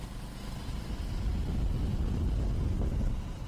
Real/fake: real